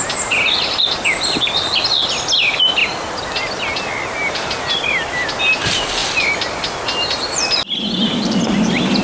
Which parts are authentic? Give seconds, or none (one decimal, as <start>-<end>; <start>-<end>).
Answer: 0.0-9.0